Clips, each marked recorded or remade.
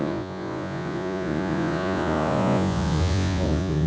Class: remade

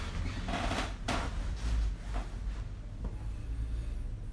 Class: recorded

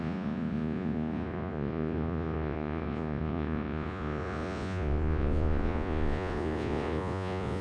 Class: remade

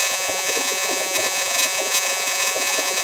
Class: remade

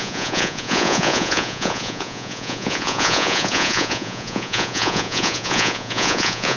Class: remade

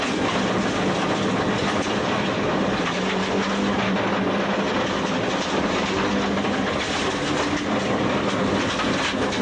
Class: recorded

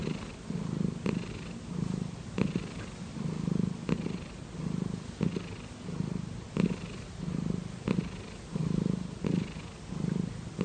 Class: recorded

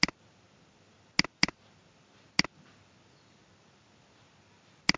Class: recorded